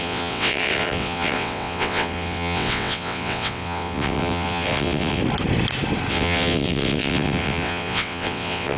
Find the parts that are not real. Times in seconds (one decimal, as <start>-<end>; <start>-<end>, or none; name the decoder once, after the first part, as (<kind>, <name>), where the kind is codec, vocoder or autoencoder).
0.0-5.2 (vocoder, WaveNeXt); 6.1-8.8